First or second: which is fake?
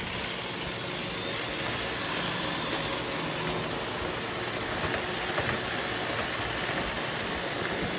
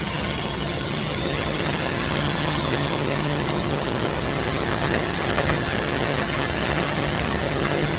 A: second